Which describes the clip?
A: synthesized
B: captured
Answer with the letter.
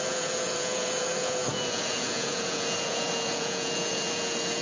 A